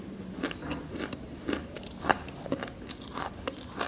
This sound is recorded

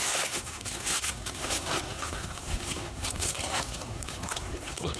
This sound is remade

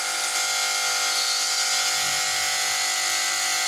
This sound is recorded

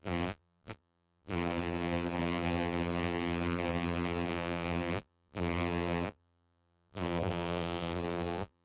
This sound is remade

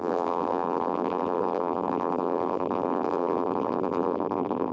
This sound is remade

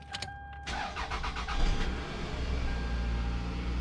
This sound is recorded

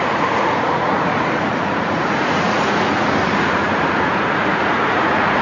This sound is remade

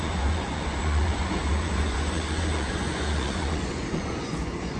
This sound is remade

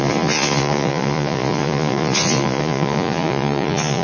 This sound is remade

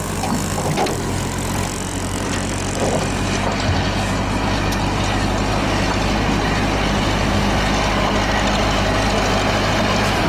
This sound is recorded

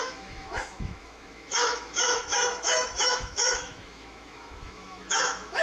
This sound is remade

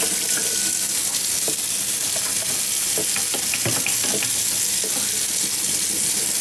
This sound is recorded